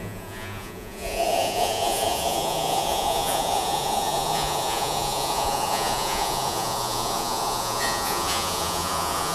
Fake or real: fake